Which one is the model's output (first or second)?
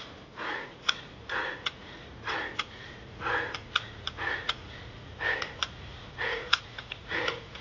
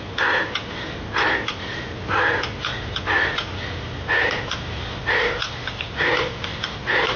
first